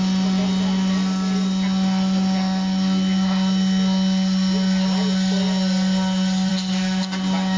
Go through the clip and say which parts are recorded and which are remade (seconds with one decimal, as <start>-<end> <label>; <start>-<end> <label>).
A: 0.0-7.6 recorded